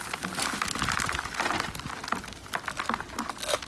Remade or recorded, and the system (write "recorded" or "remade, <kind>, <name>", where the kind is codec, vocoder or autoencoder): recorded